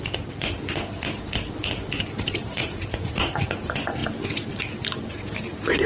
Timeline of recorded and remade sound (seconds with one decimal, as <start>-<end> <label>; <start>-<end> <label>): 0.0-2.6 recorded; 2.6-3.5 remade; 3.5-5.9 recorded